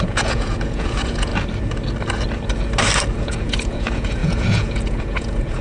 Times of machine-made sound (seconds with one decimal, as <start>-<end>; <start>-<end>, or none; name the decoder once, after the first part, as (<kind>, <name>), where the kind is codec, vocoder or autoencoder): 0.0-1.3 (vocoder, Vocos); 3.1-5.6